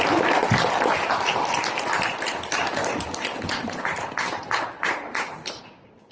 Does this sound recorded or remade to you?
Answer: recorded